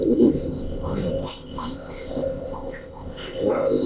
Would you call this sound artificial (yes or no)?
yes